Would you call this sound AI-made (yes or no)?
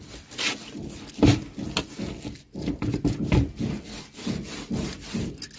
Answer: no